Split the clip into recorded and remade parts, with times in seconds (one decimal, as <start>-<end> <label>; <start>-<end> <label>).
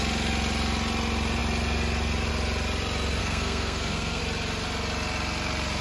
0.0-3.2 recorded; 3.2-4.2 remade; 4.2-5.8 recorded